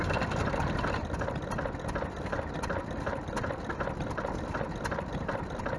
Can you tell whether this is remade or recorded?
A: recorded